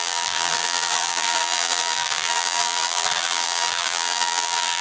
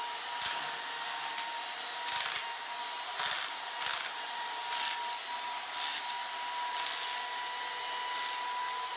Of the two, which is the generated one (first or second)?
first